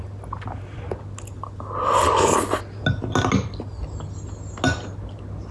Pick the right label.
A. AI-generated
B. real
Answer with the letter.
B